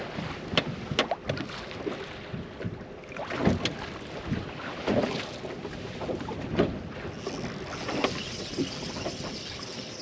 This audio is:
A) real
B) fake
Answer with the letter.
A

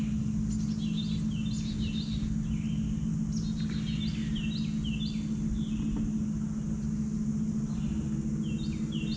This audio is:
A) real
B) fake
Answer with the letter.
A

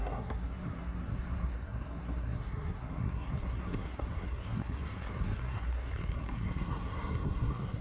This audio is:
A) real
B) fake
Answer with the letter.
B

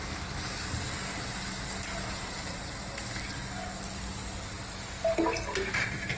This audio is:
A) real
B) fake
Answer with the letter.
A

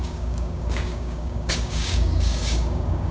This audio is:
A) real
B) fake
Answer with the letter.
B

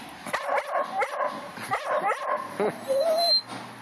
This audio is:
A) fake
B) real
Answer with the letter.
B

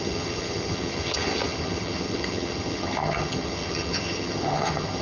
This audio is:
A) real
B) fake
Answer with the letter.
B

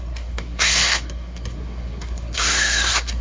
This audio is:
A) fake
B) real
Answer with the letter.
A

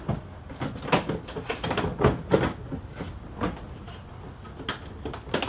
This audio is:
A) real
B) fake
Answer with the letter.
A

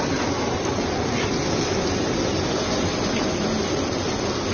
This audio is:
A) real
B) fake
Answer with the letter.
A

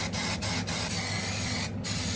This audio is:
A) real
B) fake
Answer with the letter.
A